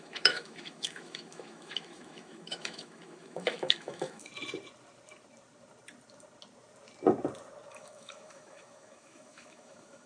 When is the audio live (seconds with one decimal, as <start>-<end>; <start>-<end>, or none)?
4.3-7.7